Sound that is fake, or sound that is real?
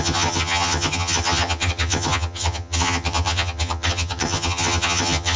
fake